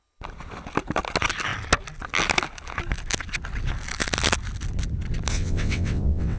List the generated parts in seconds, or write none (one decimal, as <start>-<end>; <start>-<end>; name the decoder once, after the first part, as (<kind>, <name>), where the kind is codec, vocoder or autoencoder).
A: 5.3-6.4 (vocoder, WaveNeXt)